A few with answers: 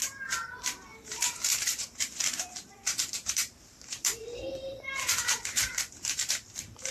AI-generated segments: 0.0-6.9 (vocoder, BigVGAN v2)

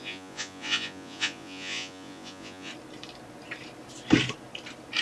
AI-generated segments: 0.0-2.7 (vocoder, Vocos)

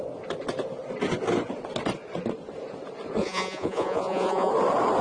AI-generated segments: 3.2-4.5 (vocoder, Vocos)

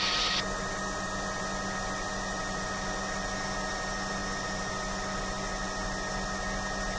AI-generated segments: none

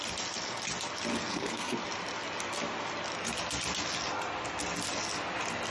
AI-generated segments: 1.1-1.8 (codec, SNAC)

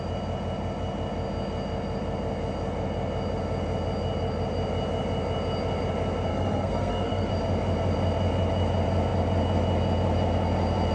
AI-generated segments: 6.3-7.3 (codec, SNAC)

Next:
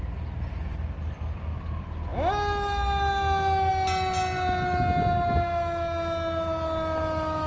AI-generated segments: none